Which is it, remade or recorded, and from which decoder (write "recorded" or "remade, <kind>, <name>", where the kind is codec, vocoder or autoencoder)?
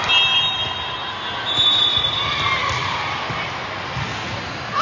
recorded